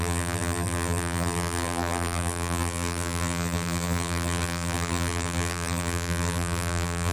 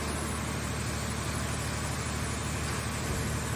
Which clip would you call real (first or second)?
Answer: second